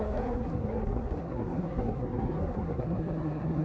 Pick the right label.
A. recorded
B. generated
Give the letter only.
B